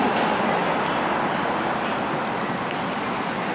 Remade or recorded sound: recorded